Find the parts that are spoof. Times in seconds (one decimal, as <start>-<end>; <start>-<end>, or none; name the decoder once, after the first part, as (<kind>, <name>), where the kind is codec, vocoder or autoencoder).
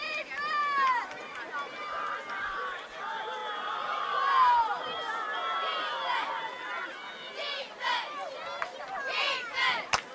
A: none